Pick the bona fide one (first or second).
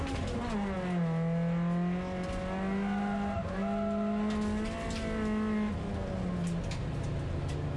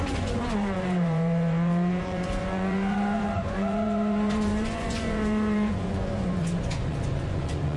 first